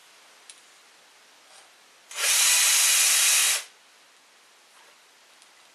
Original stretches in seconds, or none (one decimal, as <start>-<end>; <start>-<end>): 0.0-5.7